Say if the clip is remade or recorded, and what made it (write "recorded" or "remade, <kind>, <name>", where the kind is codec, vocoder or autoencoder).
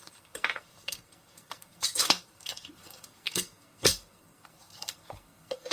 remade, codec, SNAC